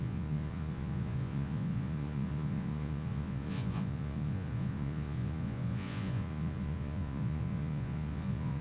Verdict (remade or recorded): remade